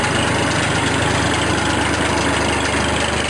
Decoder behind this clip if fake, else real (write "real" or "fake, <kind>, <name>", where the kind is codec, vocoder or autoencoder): real